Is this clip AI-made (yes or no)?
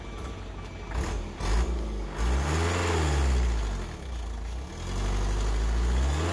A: no